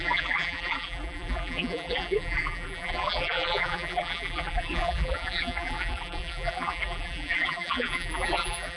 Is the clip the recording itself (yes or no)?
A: no